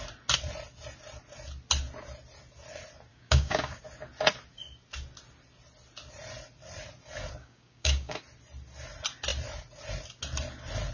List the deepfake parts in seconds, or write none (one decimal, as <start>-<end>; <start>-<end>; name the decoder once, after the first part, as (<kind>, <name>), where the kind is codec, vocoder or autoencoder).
3.1-3.8 (codec, DAC); 7.4-8.2